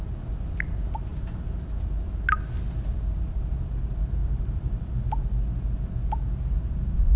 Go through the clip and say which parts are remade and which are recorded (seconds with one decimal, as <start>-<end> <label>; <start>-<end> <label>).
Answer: 0.0-1.1 recorded; 1.1-1.8 remade; 1.8-4.2 recorded; 4.2-5.0 remade; 5.0-7.2 recorded